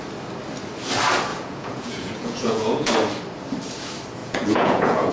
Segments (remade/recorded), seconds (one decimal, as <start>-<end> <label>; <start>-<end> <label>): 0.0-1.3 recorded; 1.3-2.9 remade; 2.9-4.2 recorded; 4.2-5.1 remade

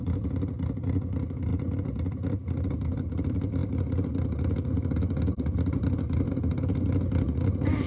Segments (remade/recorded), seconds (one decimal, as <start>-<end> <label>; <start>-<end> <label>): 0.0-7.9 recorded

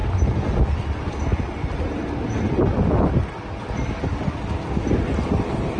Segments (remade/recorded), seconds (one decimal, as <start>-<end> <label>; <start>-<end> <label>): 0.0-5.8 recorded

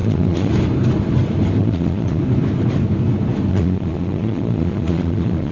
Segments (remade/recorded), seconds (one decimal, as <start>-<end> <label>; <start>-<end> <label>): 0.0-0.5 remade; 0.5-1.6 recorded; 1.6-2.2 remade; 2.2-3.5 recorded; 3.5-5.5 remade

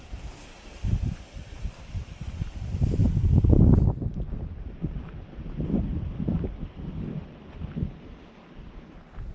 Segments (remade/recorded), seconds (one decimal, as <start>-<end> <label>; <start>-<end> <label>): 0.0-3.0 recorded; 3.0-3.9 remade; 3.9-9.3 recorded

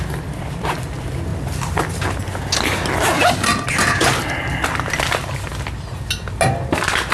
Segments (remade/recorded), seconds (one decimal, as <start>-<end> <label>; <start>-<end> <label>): 0.0-7.1 recorded

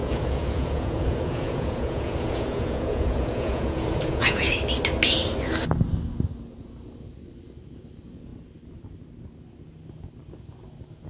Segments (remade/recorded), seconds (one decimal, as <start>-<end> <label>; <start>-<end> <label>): 0.0-4.5 remade; 4.5-11.1 recorded